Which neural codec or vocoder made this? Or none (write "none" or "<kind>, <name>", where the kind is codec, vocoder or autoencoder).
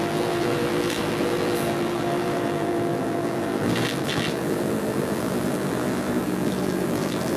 vocoder, BigVGAN v2